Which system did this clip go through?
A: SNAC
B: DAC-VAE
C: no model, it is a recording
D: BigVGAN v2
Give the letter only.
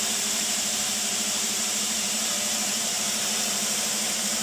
D